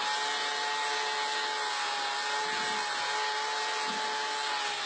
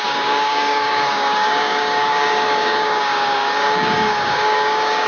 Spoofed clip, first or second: second